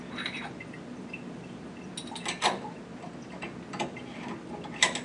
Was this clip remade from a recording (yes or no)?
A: no